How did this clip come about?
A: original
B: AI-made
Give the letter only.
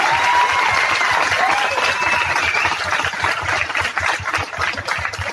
A